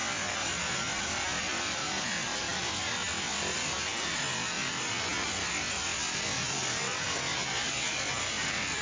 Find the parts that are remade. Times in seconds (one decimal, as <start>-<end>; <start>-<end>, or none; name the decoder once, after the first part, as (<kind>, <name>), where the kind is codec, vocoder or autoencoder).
none